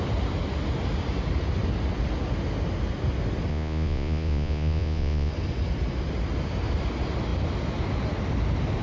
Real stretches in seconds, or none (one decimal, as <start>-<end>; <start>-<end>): 0.0-3.5; 5.3-8.8